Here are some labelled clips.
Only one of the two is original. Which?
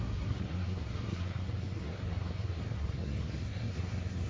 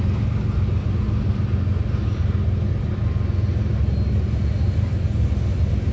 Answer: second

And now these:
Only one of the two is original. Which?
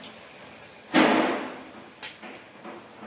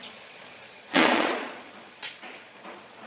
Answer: first